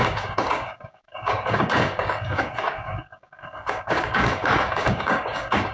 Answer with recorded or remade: remade